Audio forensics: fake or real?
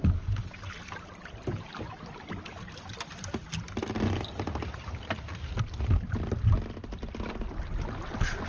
real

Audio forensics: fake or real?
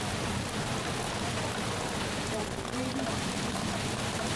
real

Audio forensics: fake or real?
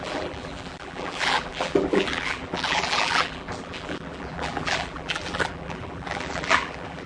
fake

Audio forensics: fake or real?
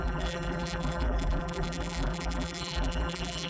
fake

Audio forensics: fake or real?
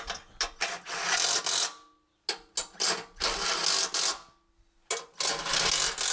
real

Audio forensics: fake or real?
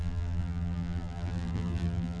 fake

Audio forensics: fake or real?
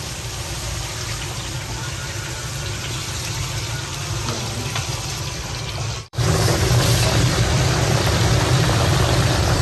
fake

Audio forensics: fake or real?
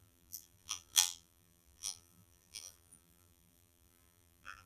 fake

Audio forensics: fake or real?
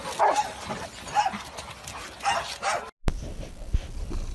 real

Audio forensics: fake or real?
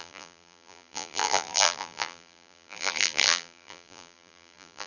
fake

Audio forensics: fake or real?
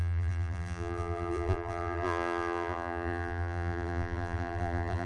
fake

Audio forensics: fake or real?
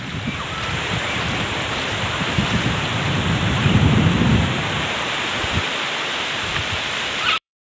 fake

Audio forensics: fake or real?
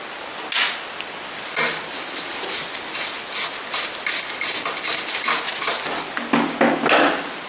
real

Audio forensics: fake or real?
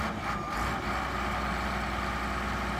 real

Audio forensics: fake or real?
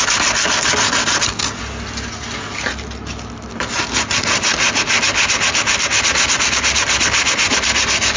real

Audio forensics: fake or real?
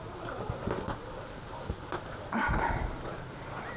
real